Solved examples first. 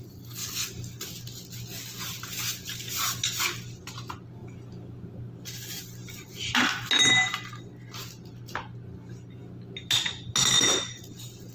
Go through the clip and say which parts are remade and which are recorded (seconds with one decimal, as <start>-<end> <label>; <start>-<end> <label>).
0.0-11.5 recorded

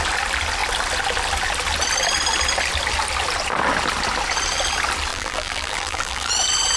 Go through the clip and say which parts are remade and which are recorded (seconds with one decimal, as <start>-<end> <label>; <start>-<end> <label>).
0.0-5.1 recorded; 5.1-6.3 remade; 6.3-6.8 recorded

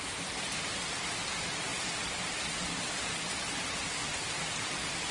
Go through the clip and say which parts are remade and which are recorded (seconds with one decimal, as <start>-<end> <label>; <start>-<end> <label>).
0.0-1.7 remade; 1.7-3.9 recorded; 3.9-5.1 remade

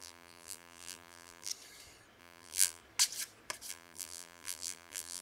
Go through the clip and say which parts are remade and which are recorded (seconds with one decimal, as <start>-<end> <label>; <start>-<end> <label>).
0.0-1.5 remade; 1.5-2.2 recorded; 2.2-2.8 remade; 2.8-3.7 recorded; 3.7-5.2 remade

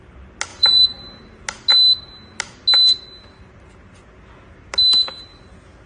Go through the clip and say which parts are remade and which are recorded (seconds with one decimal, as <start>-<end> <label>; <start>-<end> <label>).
0.0-0.5 recorded; 0.5-1.2 remade; 1.2-5.9 recorded

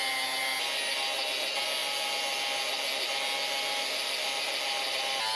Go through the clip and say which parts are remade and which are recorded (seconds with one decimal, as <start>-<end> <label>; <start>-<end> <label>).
0.0-5.4 recorded

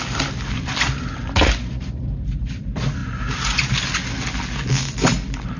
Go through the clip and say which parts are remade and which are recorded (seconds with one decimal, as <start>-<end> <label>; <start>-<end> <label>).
0.0-3.0 remade; 3.0-4.9 recorded; 4.9-5.6 remade

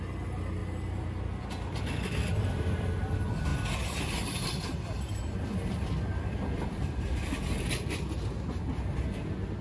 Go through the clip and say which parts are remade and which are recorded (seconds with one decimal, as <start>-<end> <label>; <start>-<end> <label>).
0.0-9.6 recorded